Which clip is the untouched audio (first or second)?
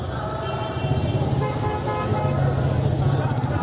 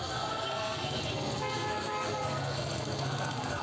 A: first